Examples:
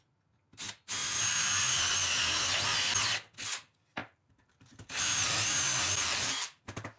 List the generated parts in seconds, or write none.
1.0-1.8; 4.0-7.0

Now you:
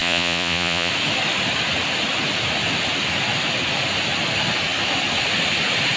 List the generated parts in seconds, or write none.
0.0-0.9

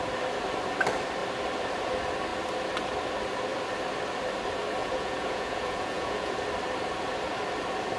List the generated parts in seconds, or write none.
4.8-6.3